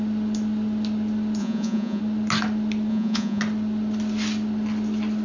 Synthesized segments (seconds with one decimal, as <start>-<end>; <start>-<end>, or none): 1.4-2.0; 2.9-3.4